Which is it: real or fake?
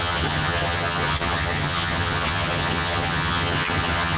fake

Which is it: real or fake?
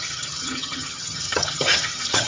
fake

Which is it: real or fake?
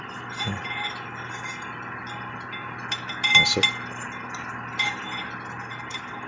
real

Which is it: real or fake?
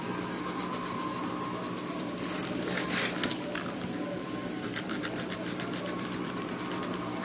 real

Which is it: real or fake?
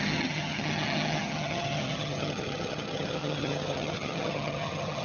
fake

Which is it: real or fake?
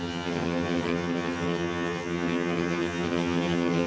fake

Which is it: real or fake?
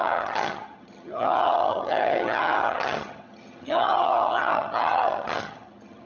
fake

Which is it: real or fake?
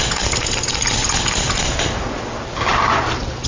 real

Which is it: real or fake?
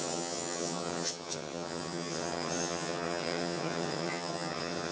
fake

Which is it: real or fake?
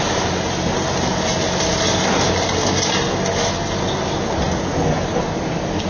real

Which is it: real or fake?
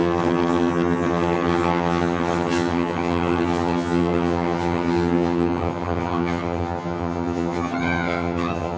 fake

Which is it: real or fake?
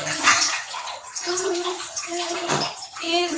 fake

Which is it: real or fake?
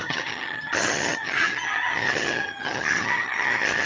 fake